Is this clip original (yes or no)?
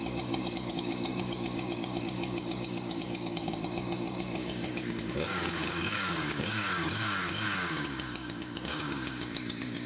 no